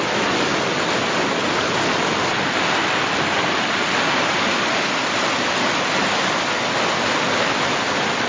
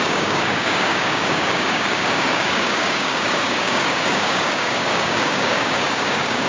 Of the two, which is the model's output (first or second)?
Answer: second